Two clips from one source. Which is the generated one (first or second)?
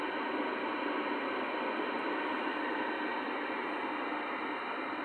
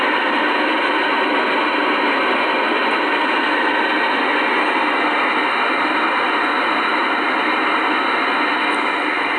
first